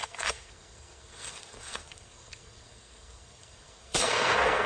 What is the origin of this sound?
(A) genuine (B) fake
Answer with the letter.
B